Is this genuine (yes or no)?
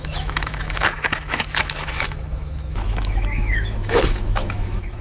no